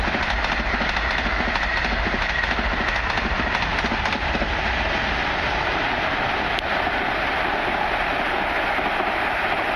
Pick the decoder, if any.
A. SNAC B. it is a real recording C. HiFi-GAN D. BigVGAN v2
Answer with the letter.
B